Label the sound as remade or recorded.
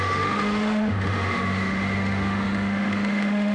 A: remade